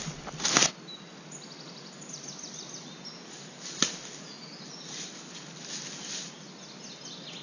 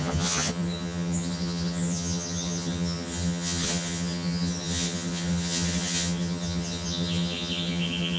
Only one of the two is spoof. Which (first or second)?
second